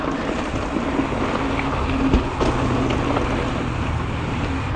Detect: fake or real real